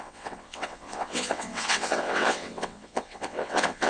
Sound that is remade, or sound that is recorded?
remade